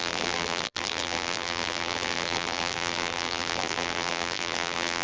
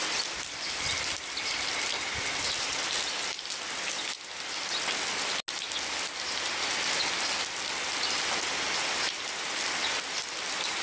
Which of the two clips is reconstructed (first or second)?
first